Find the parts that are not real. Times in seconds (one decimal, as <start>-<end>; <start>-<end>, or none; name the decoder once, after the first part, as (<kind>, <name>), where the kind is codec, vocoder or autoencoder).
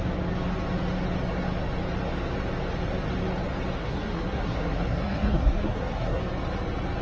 3.8-6.2 (codec, SNAC)